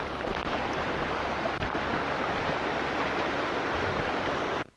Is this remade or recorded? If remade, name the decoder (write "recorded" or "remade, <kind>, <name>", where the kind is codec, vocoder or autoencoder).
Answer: recorded